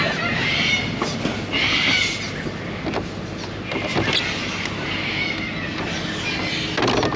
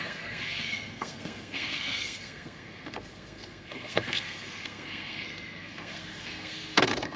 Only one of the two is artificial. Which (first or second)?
second